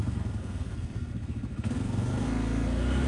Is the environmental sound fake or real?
fake